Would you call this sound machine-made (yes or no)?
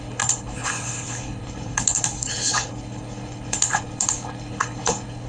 yes